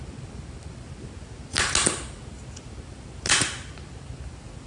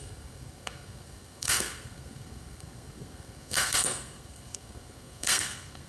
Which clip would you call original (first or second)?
first